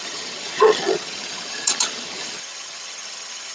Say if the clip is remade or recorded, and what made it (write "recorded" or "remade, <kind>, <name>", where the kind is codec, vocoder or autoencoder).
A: remade, vocoder, HiFi-GAN